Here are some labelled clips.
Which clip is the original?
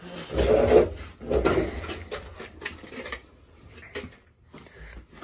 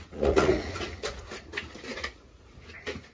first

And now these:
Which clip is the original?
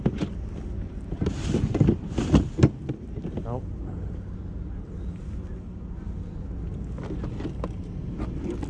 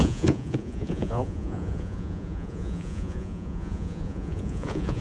first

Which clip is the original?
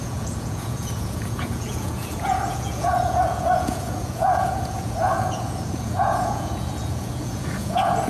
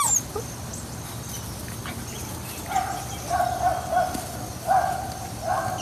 second